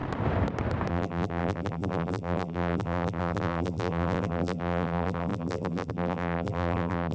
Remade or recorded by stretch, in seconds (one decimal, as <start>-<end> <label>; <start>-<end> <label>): 0.0-0.9 recorded; 0.9-7.1 remade